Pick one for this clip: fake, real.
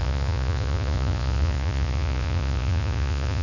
fake